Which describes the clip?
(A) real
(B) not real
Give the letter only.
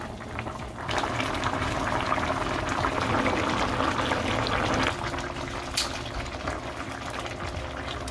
A